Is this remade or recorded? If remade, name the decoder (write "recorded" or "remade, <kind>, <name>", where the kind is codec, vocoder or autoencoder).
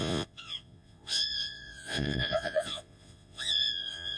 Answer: remade, vocoder, Vocos